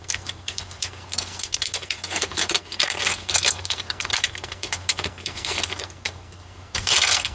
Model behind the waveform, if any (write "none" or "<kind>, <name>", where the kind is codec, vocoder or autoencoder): codec, SNAC